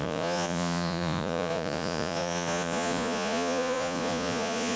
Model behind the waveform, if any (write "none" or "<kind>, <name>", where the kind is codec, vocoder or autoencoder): vocoder, Vocos